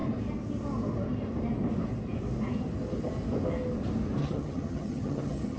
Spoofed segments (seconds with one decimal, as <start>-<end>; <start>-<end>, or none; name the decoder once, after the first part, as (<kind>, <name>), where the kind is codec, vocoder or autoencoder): 4.2-5.6 (vocoder, HiFi-GAN)